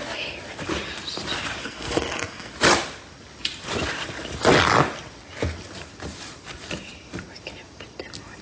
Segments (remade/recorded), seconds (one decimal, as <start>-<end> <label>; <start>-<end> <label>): 0.0-1.6 recorded; 1.6-2.5 remade; 2.5-8.4 recorded